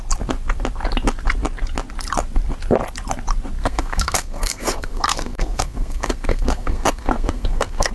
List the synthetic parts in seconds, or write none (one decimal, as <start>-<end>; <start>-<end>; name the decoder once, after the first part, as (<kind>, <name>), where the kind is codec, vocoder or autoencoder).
3.6-7.9 (codec, SNAC)